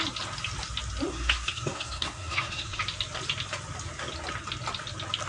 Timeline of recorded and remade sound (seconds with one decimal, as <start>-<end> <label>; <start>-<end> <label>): 0.0-1.1 recorded; 1.1-2.8 remade; 2.8-5.3 recorded

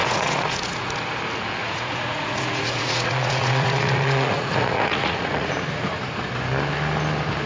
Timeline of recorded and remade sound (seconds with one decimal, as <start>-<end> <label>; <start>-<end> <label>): 0.0-1.0 remade; 1.0-1.6 recorded; 1.6-5.5 remade; 5.5-7.5 recorded

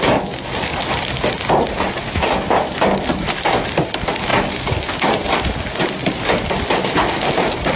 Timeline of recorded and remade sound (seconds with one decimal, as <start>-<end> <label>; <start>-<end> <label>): 0.0-7.8 recorded

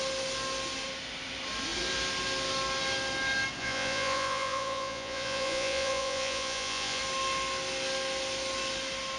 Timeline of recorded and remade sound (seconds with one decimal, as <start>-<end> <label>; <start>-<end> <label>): 0.0-3.6 recorded; 3.6-7.0 remade; 7.0-9.2 recorded

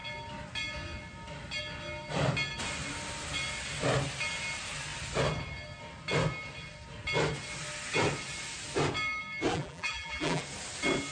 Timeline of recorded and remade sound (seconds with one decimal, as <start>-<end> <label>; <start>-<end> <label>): 0.0-9.5 recorded; 9.5-10.4 remade; 10.4-11.1 recorded